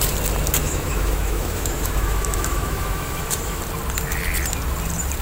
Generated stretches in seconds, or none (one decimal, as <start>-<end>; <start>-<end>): 0.6-3.6